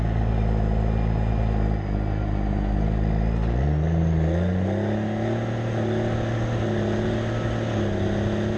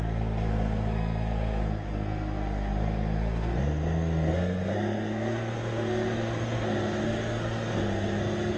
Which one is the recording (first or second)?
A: first